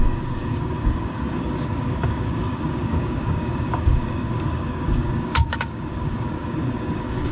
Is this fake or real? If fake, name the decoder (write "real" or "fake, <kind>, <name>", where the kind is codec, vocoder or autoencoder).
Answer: fake, codec, DAC